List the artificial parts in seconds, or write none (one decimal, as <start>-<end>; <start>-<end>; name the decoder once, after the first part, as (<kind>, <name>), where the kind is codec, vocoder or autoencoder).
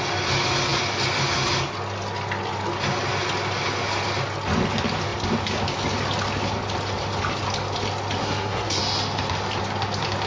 8.2-8.8 (codec, SNAC)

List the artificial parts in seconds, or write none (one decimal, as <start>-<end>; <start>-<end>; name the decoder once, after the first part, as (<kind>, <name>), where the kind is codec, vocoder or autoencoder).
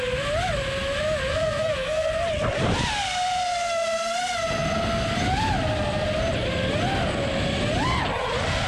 1.3-2.1 (codec, SNAC)